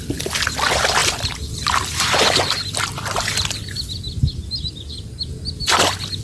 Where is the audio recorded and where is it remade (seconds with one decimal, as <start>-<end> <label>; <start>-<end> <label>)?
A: 0.0-6.2 recorded

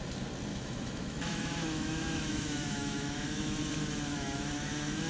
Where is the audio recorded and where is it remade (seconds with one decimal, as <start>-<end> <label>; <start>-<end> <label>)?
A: 0.0-0.5 recorded; 0.5-3.6 remade; 3.6-4.1 recorded; 4.1-5.1 remade